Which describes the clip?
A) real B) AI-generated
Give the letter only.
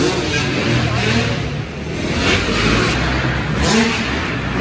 A